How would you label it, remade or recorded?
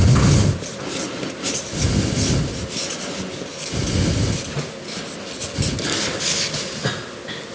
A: recorded